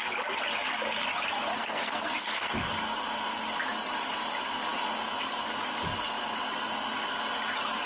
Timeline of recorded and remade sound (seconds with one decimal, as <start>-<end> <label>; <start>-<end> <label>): 0.0-1.5 recorded; 1.5-2.5 remade; 2.5-7.9 recorded